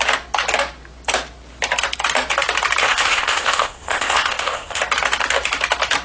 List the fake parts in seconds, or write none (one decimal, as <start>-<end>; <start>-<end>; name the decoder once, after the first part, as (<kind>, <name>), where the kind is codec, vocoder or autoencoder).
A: 2.8-4.8 (codec, ZipCodec)